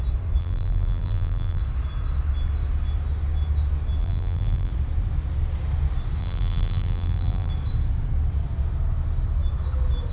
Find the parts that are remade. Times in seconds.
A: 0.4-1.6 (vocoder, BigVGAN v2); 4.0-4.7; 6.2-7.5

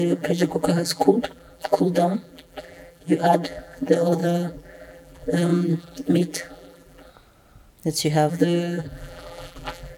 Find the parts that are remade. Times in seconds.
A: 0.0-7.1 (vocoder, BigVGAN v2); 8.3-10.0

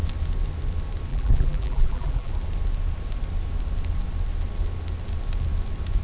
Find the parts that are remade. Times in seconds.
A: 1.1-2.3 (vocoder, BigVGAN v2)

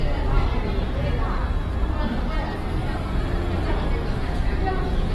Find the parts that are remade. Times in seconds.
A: 0.0-1.4 (vocoder, BigVGAN v2); 3.9-5.1

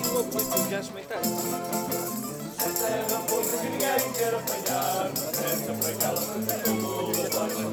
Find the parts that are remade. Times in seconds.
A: none

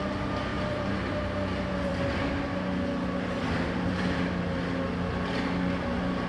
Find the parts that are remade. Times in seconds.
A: 0.5-1.0 (vocoder, BigVGAN v2)